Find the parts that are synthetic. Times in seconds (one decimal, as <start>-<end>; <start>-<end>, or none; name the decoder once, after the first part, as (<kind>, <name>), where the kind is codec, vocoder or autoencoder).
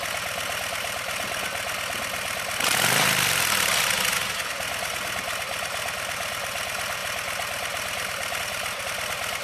none